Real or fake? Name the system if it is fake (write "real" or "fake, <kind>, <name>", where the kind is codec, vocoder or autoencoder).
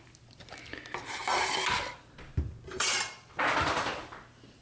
real